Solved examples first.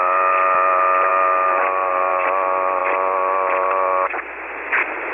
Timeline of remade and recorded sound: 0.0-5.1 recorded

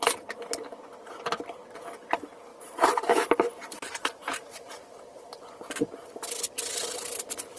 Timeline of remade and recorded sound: 0.0-2.5 recorded; 2.5-6.1 remade; 6.1-7.6 recorded

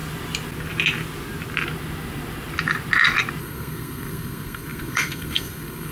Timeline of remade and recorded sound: 0.0-3.4 recorded; 3.4-5.9 remade

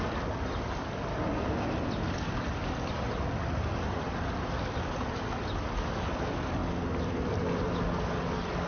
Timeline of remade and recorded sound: 0.0-8.7 recorded

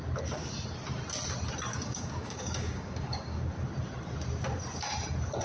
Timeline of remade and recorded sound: 0.0-1.7 recorded; 1.7-3.4 remade; 3.4-5.4 recorded

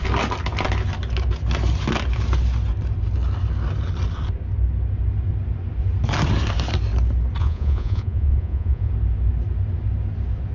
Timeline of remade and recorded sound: 0.0-7.4 recorded; 7.4-8.9 remade; 8.9-10.5 recorded

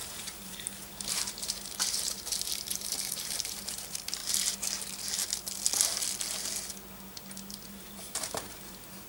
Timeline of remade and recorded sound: 0.0-4.2 remade; 4.2-7.5 recorded; 7.5-9.1 remade

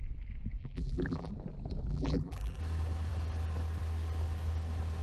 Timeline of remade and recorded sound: 0.0-0.6 recorded; 0.6-1.3 remade; 1.3-1.9 recorded; 1.9-2.6 remade; 2.6-5.0 recorded